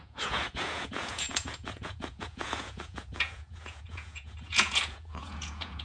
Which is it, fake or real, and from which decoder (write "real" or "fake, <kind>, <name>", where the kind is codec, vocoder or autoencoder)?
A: fake, vocoder, Vocos